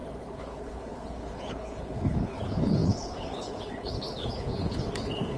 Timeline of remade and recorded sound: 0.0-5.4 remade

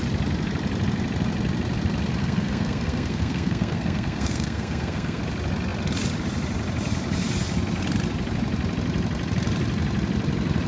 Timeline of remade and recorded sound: 0.0-2.2 recorded; 2.2-5.2 remade; 5.2-10.7 recorded

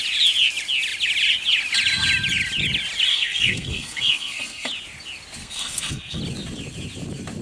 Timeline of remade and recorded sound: 0.0-3.1 recorded; 3.1-4.7 remade; 4.7-5.4 recorded; 5.4-6.2 remade; 6.2-7.4 recorded

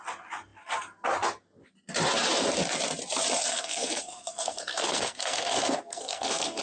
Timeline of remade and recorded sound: 0.0-3.5 recorded; 3.5-6.6 remade

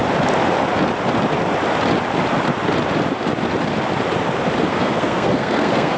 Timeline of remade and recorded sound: 0.0-4.7 recorded; 4.7-6.0 remade

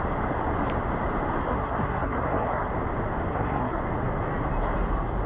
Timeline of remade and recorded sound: 0.0-1.4 recorded; 1.4-2.7 remade; 2.7-3.3 recorded; 3.3-3.8 remade; 3.8-5.3 recorded

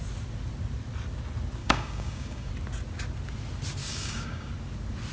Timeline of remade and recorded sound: 0.0-1.6 recorded; 1.6-2.5 remade; 2.5-3.8 recorded; 3.8-4.5 remade; 4.5-5.1 recorded

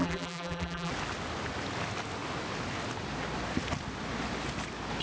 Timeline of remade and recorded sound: 0.0-0.9 remade; 0.9-5.0 recorded